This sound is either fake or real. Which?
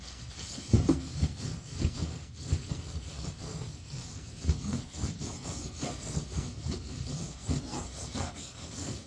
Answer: fake